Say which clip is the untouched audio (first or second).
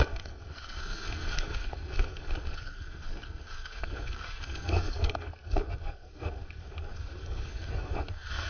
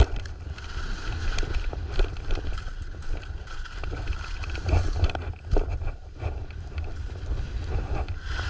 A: second